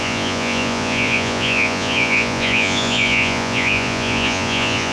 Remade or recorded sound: remade